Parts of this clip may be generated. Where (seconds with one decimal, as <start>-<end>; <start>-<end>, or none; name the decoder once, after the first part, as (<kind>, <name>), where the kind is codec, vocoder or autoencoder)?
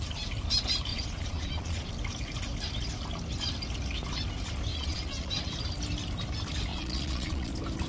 0.9-1.9 (vocoder, Vocos); 4.7-5.3; 6.7-7.5